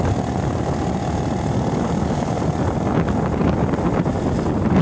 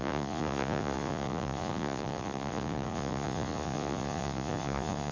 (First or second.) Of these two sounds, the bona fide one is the first